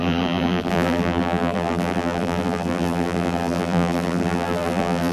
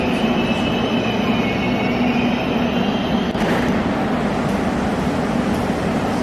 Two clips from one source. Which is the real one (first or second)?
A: second